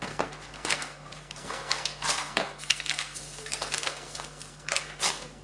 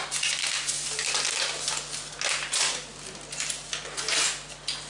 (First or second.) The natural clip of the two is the second